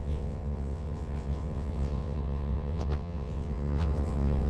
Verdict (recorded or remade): remade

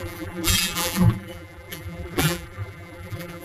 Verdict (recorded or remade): remade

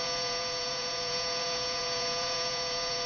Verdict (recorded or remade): remade